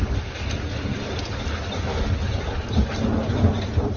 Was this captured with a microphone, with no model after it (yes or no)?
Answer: yes